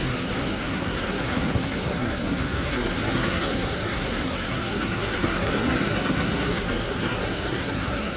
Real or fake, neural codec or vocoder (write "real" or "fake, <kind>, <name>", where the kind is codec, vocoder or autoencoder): fake, codec, SNAC